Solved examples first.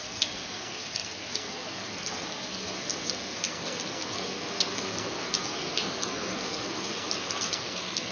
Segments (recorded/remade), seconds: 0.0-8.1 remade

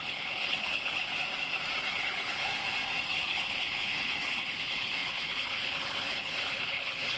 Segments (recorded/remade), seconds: 0.0-1.1 remade; 1.1-1.9 recorded; 1.9-2.5 remade; 2.5-3.1 recorded; 3.1-7.2 remade